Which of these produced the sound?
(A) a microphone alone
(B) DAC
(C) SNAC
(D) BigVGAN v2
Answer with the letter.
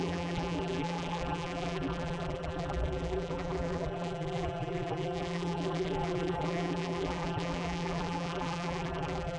D